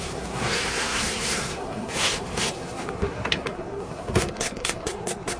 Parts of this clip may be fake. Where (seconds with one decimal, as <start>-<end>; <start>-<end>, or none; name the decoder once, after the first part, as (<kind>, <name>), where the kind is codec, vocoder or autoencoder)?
0.0-5.4 (codec, SNAC)